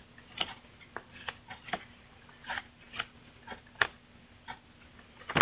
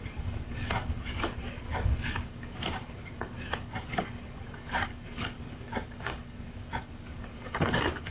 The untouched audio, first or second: first